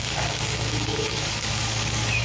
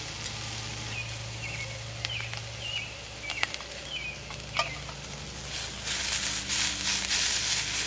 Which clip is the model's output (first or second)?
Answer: first